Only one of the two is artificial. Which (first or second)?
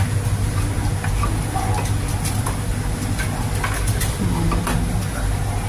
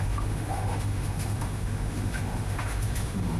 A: second